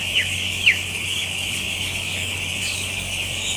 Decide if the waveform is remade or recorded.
remade